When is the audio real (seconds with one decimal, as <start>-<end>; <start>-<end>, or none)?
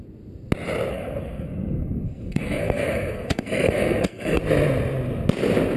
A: 0.0-0.9; 4.4-5.8